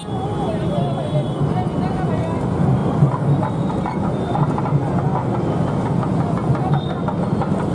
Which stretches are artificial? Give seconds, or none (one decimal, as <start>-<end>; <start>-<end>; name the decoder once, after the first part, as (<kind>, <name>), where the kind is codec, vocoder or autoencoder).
none